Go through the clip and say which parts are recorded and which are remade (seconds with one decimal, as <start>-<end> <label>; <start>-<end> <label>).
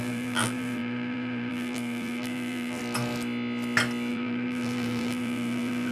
0.0-2.8 remade; 2.8-4.1 recorded; 4.1-5.9 remade